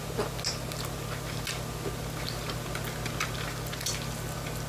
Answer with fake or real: real